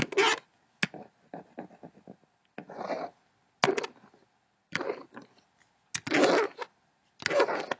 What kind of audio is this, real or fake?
real